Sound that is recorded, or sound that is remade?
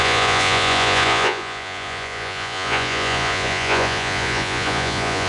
remade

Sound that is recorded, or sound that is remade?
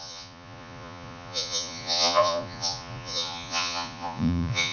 remade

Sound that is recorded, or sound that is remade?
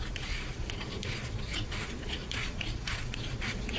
remade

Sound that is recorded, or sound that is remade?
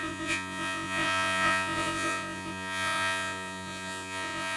remade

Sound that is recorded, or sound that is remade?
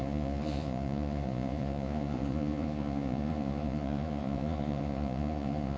remade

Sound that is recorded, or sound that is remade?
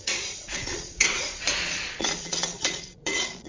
remade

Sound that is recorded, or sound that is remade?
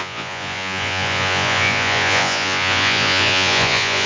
remade